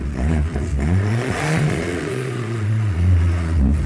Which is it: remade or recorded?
remade